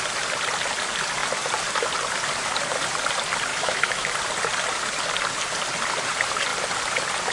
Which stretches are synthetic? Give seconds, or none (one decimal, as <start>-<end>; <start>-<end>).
3.5-4.1